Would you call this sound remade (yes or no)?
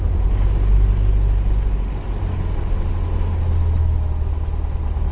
no